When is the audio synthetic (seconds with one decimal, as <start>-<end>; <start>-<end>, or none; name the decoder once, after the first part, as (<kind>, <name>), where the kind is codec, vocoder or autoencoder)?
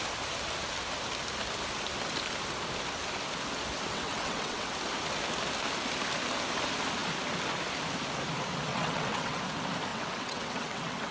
3.9-4.8 (vocoder, WaveNeXt); 8.7-9.4; 9.9-11.1